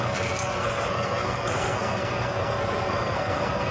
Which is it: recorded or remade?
remade